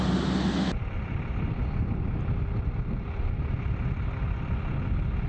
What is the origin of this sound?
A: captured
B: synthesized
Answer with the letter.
A